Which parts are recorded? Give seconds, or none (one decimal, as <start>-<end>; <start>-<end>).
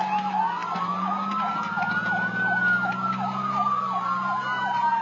0.0-5.0